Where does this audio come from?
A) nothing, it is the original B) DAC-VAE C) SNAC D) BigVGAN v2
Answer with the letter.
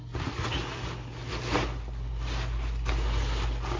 A